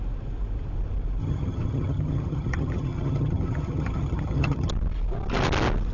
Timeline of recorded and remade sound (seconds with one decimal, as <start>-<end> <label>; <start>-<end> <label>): 0.0-1.2 recorded; 1.2-4.7 remade; 4.7-5.9 recorded